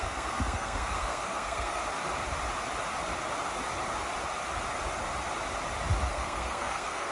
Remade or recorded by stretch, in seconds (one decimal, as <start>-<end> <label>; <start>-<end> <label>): 0.0-1.8 remade; 1.8-6.1 recorded; 6.1-7.1 remade